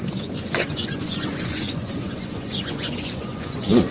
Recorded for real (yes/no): no